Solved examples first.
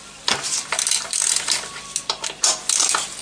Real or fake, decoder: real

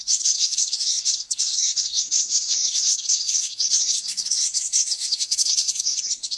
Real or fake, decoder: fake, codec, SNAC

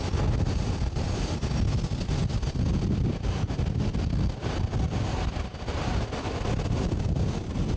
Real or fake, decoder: real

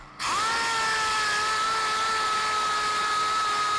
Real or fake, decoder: real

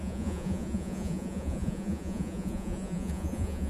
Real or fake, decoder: fake, vocoder, Vocos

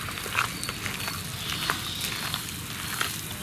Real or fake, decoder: real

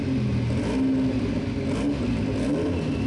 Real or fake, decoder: real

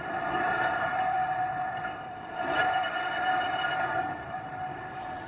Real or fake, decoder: fake, vocoder, BigVGAN v2